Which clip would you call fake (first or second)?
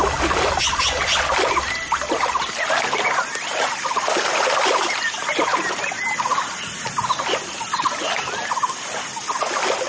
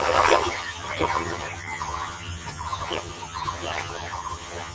second